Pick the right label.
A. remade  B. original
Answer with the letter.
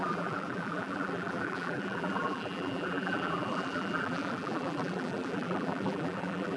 A